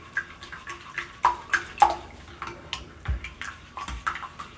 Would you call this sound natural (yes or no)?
yes